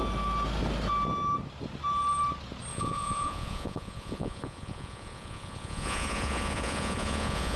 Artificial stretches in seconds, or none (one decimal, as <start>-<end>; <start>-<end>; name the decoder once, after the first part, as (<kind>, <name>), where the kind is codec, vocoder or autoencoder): 2.7-7.6 (vocoder, Vocos)